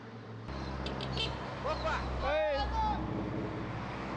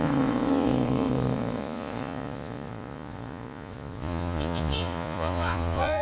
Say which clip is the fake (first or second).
second